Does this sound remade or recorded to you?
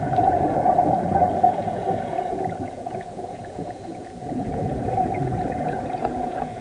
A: remade